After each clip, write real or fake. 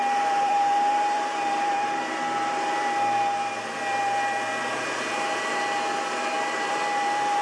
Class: fake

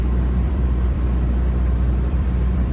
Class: fake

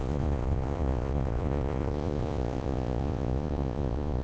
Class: fake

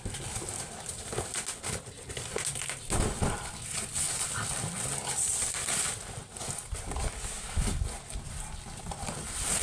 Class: real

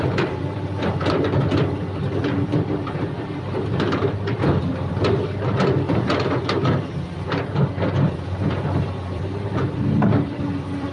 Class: fake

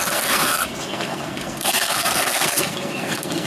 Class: fake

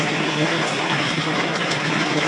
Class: fake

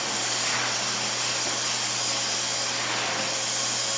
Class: real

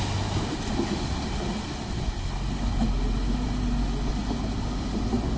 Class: real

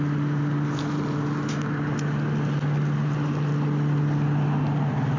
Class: real